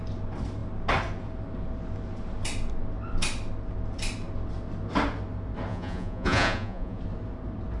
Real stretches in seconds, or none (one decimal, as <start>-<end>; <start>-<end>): 0.0-5.7; 7.0-7.8